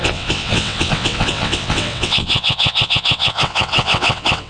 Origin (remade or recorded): remade